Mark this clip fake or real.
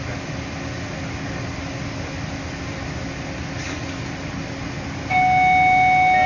real